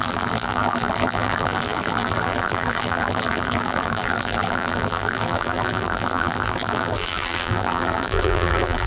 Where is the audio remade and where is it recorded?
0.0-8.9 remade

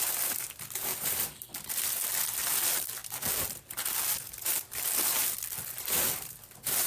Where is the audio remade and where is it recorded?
0.0-3.0 remade; 3.0-3.6 recorded; 3.6-6.9 remade

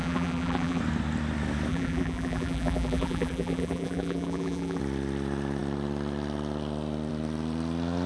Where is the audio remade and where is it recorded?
0.0-0.8 remade; 0.8-1.7 recorded; 1.7-4.8 remade; 4.8-8.1 recorded

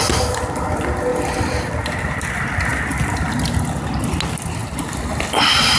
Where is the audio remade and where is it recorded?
0.0-1.1 recorded; 1.1-2.3 remade; 2.3-2.7 recorded; 2.7-3.5 remade; 3.5-4.6 recorded; 4.6-5.8 remade